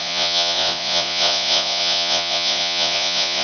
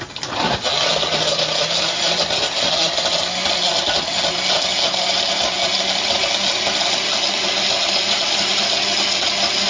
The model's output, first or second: first